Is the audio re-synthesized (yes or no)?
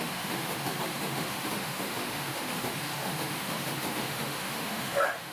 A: yes